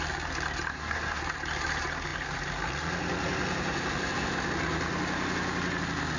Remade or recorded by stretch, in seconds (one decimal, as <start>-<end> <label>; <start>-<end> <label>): 0.0-0.7 recorded; 0.7-1.2 remade; 1.2-6.2 recorded